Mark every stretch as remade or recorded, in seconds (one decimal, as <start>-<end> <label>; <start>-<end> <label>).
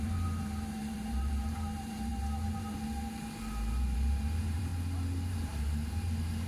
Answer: 0.0-4.7 remade; 4.7-5.3 recorded; 5.3-6.5 remade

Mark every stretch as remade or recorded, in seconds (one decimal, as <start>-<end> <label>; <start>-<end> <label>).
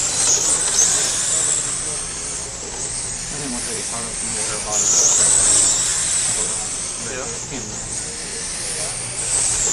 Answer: 0.0-2.5 recorded; 2.5-4.5 remade; 4.5-5.9 recorded; 5.9-8.0 remade; 8.0-9.7 recorded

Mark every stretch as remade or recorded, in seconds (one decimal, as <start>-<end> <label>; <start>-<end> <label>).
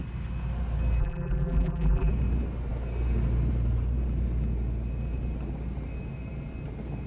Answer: 0.0-1.0 recorded; 1.0-2.1 remade; 2.1-7.1 recorded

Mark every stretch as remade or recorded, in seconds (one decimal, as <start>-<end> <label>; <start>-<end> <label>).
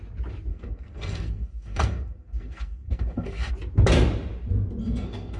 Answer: 0.0-0.5 recorded; 0.5-3.5 remade; 3.5-4.8 recorded; 4.8-5.4 remade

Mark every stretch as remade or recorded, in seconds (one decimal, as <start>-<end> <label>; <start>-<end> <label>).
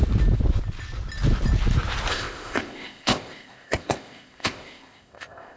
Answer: 0.0-2.1 recorded; 2.1-5.6 remade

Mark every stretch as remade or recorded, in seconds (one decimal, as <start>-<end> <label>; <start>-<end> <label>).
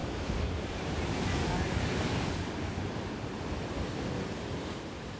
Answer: 0.0-0.7 remade; 0.7-1.4 recorded; 1.4-2.8 remade; 2.8-5.2 recorded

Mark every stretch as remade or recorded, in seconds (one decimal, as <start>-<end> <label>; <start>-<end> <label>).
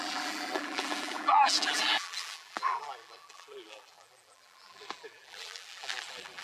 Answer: 0.0-6.4 remade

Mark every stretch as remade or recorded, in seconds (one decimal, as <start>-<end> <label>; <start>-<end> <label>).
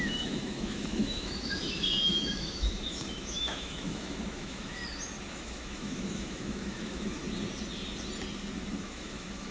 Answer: 0.0-4.8 remade; 4.8-5.3 recorded; 5.3-7.2 remade; 7.2-8.8 recorded; 8.8-9.5 remade